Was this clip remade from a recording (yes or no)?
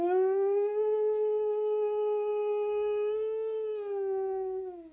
yes